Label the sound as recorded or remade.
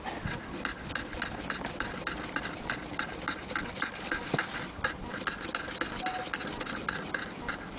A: recorded